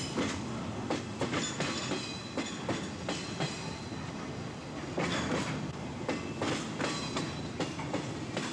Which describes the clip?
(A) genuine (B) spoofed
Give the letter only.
A